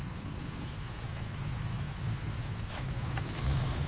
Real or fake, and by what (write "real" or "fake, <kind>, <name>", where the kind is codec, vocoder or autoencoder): fake, autoencoder, DAC-VAE